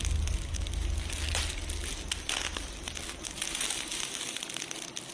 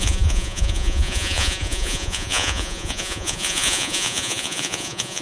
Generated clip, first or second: second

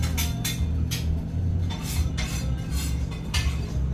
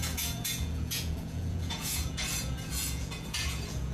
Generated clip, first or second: second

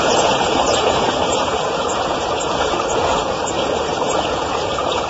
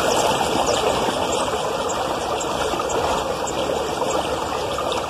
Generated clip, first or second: first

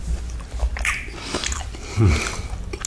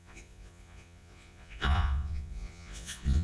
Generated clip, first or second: second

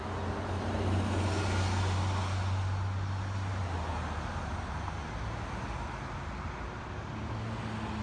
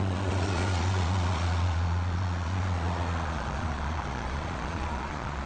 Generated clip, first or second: second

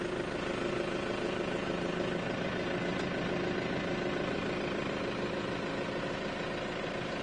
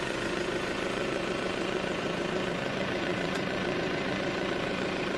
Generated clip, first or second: second